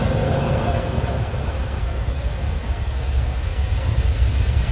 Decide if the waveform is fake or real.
fake